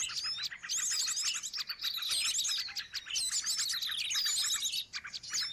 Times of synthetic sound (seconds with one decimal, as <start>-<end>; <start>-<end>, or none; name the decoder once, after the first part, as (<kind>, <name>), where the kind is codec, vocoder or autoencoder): none

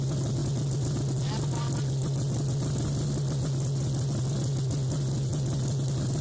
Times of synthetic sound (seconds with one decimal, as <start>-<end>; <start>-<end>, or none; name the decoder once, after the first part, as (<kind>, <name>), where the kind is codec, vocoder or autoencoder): none

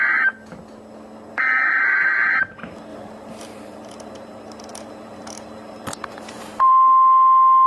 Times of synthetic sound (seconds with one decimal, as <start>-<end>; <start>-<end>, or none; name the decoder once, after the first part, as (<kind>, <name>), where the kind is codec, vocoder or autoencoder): 1.3-2.4 (vocoder, BigVGAN v2); 2.9-6.7

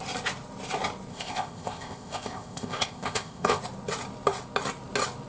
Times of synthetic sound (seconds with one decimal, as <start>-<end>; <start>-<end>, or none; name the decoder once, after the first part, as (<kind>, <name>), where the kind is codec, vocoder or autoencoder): 1.1-3.6 (codec, ZipCodec)